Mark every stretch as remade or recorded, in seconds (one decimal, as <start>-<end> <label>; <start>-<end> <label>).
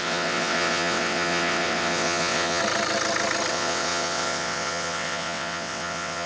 0.0-2.6 remade; 2.6-3.5 recorded; 3.5-6.3 remade